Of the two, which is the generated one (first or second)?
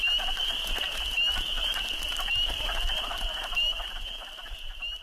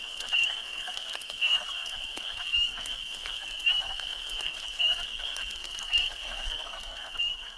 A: second